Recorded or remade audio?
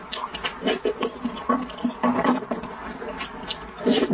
recorded